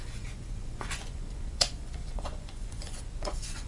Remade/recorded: remade